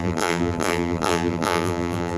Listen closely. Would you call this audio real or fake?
fake